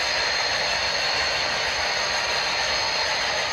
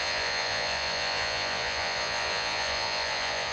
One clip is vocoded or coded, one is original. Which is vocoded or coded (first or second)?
second